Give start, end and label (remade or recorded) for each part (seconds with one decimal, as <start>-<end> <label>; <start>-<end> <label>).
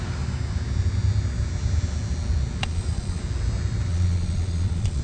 0.0-2.6 recorded; 2.6-3.2 remade; 3.2-3.9 recorded; 3.9-5.0 remade